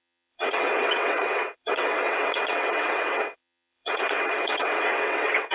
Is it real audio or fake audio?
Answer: fake